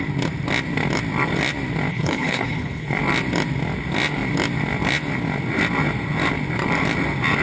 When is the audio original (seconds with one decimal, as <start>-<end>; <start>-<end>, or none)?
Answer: 0.0-1.9; 3.0-7.4